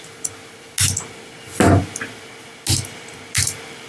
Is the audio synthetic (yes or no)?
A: no